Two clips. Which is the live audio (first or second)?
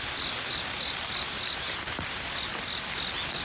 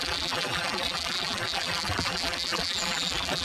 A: first